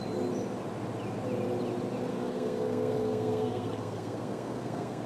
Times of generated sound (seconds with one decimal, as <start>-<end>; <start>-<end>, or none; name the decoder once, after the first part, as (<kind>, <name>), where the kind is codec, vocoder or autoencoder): 2.1-5.1 (codec, SNAC)